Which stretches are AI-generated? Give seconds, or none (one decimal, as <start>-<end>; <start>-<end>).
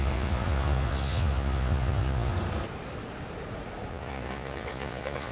0.0-2.3; 3.9-5.3